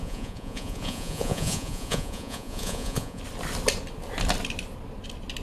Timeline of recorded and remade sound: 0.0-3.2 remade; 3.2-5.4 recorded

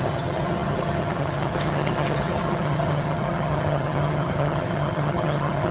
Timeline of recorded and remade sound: 0.0-5.7 remade

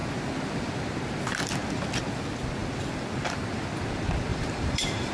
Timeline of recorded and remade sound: 0.0-4.3 recorded; 4.3-5.1 remade